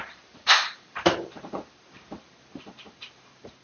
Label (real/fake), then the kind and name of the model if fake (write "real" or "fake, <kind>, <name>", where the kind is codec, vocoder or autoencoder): fake, vocoder, BigVGAN v2